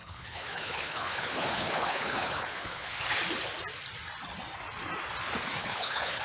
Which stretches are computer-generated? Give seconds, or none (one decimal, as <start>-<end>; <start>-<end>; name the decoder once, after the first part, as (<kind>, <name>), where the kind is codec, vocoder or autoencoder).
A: 0.0-3.0 (codec, HILCodec); 5.6-6.2